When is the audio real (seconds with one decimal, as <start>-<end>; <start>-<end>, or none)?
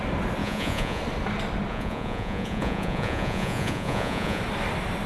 0.0-0.4; 1.0-1.7; 4.4-5.1